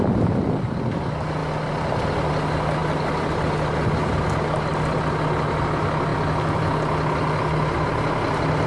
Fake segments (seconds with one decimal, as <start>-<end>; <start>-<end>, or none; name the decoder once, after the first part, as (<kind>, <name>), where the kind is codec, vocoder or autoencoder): none